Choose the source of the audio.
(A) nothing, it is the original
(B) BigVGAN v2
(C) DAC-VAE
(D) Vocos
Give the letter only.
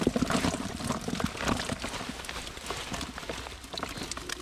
A